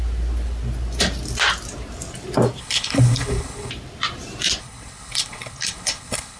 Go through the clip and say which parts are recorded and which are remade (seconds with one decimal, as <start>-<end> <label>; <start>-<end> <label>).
0.0-2.6 recorded; 2.6-3.7 remade; 3.7-4.6 recorded; 4.6-6.4 remade